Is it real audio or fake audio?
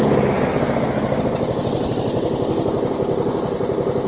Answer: real